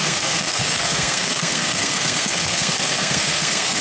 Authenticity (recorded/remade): remade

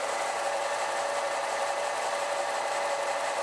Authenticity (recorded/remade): remade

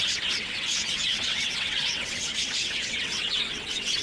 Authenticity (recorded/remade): remade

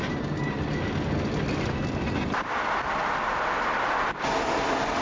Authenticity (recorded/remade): recorded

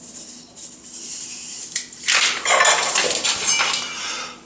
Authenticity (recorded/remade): recorded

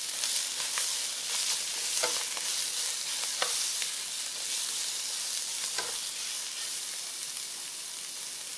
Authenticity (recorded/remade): recorded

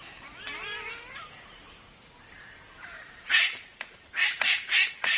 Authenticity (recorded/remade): remade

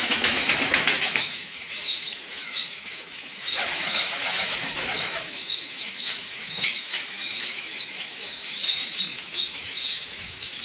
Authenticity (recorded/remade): remade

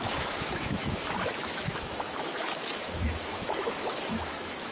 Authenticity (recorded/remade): remade